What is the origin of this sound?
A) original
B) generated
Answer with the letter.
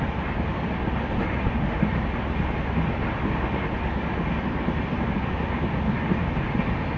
A